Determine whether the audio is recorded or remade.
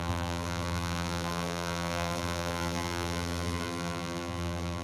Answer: remade